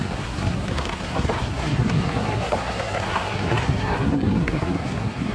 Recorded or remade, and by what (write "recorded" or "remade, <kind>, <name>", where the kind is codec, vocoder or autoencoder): remade, codec, SNAC